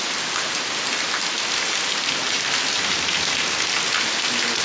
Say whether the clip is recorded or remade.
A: recorded